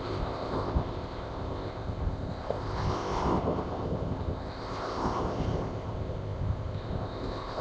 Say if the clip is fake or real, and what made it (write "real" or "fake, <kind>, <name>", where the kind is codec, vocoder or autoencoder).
fake, codec, ZipCodec